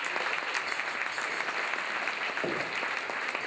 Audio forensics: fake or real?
real